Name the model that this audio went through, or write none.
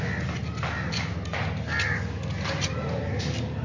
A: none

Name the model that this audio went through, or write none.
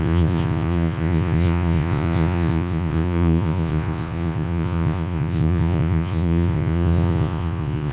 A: vocoder, Vocos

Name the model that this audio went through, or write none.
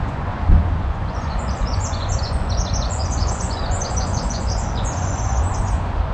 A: vocoder, Vocos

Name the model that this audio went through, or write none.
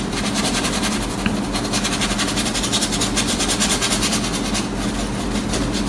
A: none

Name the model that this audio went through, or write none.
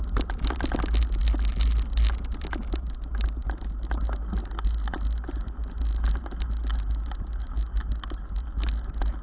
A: none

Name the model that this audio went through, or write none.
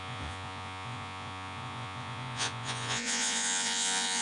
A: vocoder, Vocos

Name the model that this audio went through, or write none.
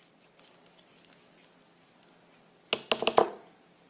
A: none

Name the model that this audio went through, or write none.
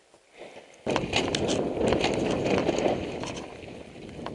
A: none